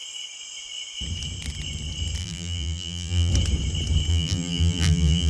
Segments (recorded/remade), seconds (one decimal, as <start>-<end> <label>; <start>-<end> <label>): 0.0-2.2 recorded; 2.2-3.3 remade; 3.3-4.1 recorded; 4.1-5.3 remade